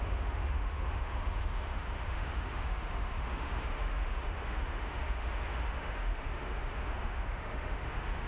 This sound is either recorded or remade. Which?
remade